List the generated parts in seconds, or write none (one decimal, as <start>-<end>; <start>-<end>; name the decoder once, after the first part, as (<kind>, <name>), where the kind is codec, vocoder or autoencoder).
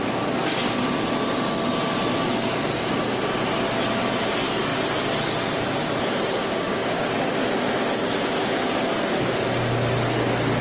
none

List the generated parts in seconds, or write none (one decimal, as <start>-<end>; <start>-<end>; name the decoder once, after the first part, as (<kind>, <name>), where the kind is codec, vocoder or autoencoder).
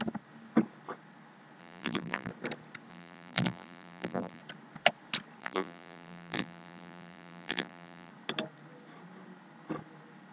1.6-2.3 (vocoder, BigVGAN v2); 2.9-4.4; 5.4-8.1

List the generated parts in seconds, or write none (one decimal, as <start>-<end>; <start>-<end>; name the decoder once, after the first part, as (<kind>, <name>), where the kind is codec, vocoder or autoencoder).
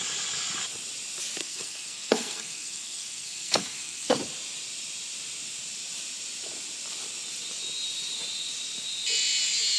1.4-4.2 (codec, SNAC)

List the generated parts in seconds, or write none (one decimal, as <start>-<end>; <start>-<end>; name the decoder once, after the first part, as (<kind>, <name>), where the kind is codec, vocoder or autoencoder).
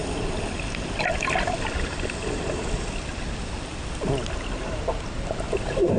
none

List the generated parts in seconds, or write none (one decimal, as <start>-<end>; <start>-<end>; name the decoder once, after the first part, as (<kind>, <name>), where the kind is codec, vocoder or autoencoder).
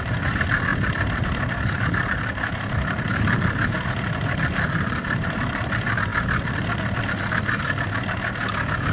0.7-5.5 (vocoder, BigVGAN v2)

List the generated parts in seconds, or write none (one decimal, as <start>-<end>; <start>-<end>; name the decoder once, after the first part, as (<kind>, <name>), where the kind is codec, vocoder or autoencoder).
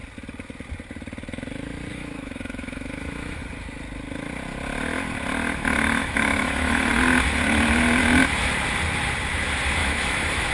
1.9-3.4 (autoencoder, DAC-VAE); 6.0-6.9; 9.8-10.5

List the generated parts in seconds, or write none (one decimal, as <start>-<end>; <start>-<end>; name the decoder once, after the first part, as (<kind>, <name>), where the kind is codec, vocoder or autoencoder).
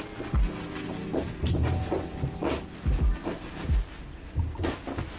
3.2-4.5 (vocoder, BigVGAN v2)